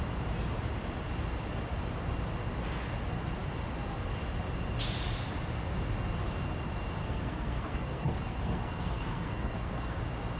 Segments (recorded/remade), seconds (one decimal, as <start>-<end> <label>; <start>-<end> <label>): 0.0-7.0 recorded; 7.0-10.0 remade; 10.0-10.4 recorded